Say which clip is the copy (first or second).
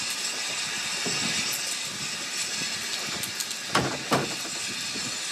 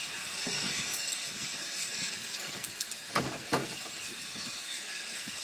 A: second